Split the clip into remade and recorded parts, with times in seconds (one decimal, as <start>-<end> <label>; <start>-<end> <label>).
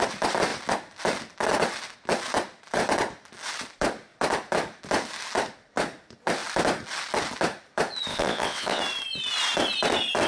0.0-8.1 recorded; 8.1-8.8 remade; 8.8-10.3 recorded